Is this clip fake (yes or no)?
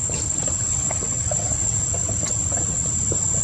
no